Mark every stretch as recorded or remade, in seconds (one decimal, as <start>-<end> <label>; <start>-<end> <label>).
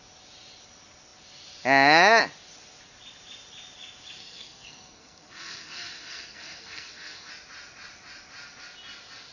0.0-4.2 recorded; 4.2-7.3 remade; 7.3-9.3 recorded